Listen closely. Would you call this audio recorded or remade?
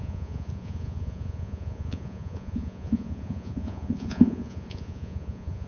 remade